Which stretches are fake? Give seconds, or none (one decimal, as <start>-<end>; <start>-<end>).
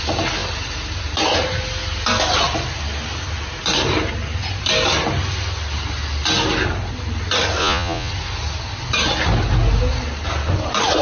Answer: 7.6-8.1